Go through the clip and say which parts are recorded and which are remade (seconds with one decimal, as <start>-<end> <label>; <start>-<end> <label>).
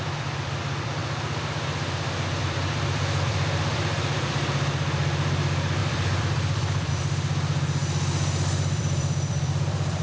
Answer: 0.0-1.0 remade; 1.0-2.4 recorded; 2.4-10.0 remade